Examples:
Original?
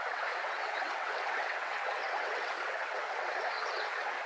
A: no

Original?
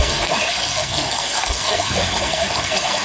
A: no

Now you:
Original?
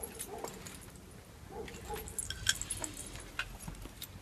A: yes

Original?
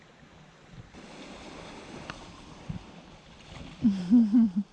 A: yes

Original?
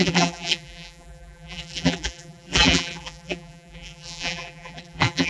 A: no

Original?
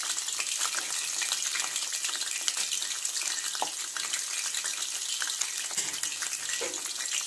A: yes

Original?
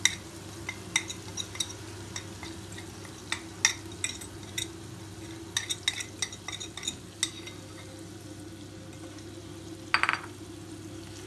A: yes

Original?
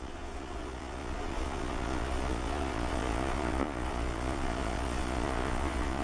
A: no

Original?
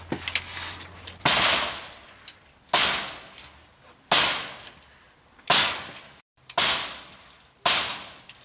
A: yes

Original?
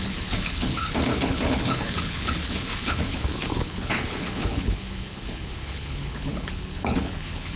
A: no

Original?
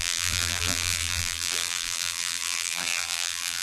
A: no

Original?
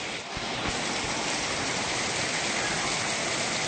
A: no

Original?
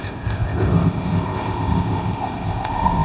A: no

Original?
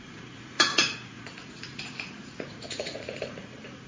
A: no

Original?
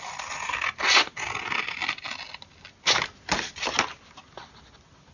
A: yes